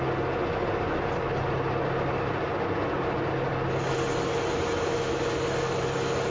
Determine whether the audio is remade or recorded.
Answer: recorded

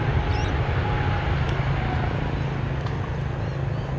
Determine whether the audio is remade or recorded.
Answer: recorded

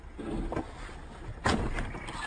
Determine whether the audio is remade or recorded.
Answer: recorded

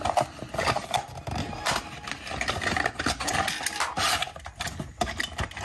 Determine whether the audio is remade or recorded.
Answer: recorded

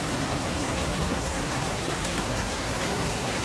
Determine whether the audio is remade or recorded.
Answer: remade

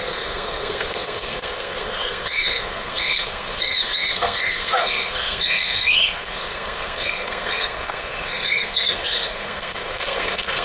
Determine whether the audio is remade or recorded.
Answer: remade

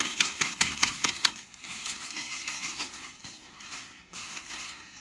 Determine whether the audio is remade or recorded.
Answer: remade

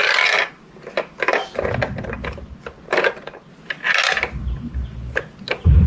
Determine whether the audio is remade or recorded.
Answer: recorded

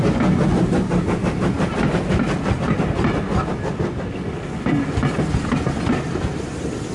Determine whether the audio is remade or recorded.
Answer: recorded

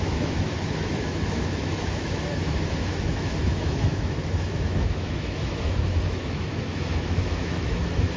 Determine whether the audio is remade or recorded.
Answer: remade